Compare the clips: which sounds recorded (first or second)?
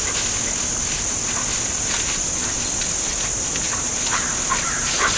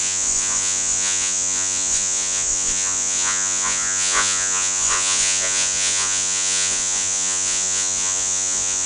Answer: first